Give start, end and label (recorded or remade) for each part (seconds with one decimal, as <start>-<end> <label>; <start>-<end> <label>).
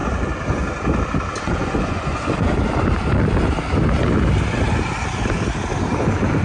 0.0-1.4 recorded; 1.4-2.5 remade; 2.5-6.4 recorded